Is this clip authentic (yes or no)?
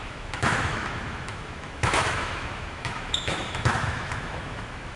no